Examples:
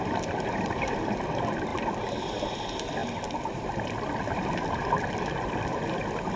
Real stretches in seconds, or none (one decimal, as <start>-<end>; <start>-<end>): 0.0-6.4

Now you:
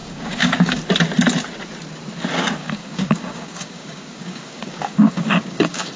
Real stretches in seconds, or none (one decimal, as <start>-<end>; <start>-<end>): 0.8-2.6

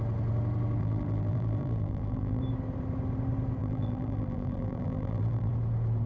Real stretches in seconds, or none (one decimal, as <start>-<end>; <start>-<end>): 0.0-0.8; 2.4-3.6; 5.5-6.1